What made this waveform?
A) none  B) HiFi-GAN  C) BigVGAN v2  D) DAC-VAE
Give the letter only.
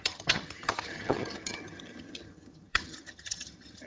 B